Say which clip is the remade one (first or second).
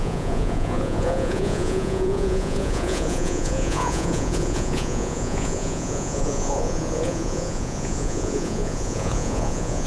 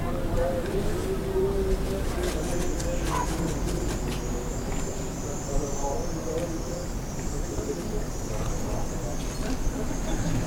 first